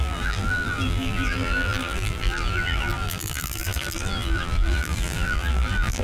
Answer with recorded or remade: remade